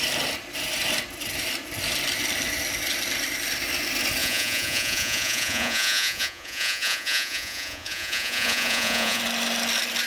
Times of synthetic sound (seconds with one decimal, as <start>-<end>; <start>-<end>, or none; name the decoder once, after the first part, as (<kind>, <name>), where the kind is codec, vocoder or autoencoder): 4.2-9.2 (vocoder, Vocos)